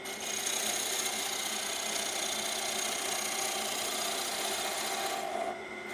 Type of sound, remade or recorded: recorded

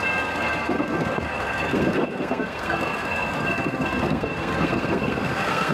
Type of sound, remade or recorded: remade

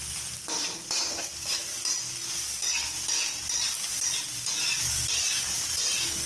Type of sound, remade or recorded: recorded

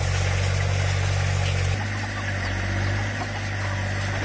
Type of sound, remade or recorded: recorded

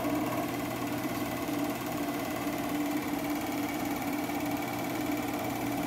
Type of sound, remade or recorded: remade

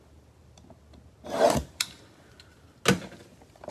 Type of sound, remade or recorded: recorded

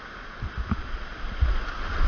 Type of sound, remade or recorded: recorded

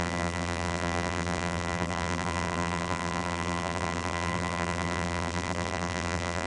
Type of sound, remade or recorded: remade